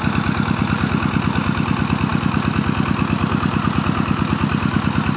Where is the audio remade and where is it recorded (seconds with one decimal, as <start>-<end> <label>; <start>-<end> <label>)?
0.0-5.2 recorded